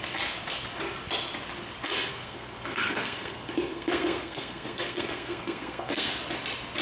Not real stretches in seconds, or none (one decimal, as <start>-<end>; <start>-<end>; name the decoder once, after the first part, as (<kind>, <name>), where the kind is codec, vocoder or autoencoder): 2.1-6.1 (codec, SNAC)